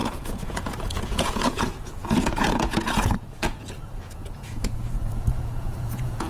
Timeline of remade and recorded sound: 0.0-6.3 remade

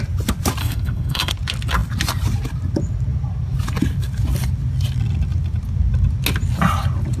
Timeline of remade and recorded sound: 0.0-0.6 recorded; 0.6-1.3 remade; 1.3-7.2 recorded